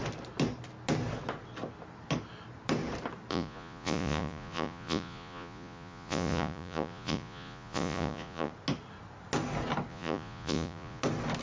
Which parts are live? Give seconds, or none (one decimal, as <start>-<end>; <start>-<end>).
0.0-3.3; 8.5-9.9; 11.0-11.4